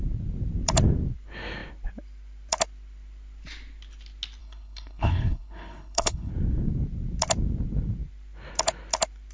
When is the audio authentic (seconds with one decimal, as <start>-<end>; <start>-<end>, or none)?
0.0-4.4; 6.3-9.3